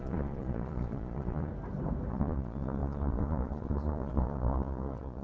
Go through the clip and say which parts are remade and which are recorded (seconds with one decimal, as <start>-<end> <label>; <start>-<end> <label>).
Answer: 0.0-1.5 remade; 1.5-2.1 recorded; 2.1-5.2 remade